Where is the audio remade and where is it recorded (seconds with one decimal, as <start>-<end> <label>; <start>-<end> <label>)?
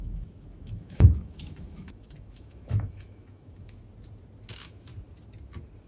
0.0-3.9 remade; 3.9-4.5 recorded; 4.5-4.9 remade; 4.9-5.9 recorded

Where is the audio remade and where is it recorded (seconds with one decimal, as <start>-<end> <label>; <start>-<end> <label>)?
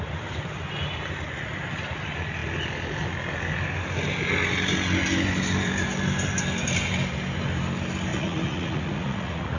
0.0-8.1 recorded; 8.1-9.6 remade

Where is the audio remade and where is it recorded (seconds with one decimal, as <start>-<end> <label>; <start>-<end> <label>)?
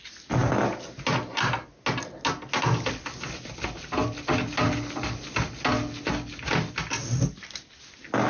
0.0-8.3 recorded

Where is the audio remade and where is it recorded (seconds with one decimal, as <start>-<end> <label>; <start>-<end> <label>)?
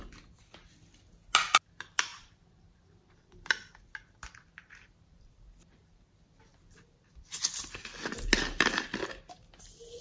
0.0-2.1 recorded; 2.1-7.3 remade; 7.3-10.0 recorded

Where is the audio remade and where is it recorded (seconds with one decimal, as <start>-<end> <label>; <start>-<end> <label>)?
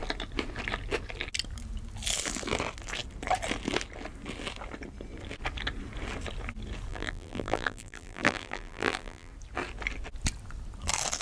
0.0-6.9 recorded; 6.9-9.3 remade; 9.3-11.2 recorded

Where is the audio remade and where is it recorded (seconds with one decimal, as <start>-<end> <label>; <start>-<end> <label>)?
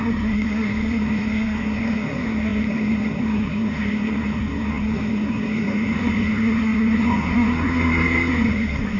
0.0-9.0 remade